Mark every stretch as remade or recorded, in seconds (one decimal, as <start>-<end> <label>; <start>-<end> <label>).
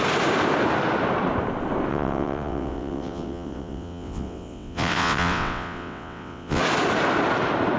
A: 0.0-1.9 recorded; 1.9-6.6 remade; 6.6-7.8 recorded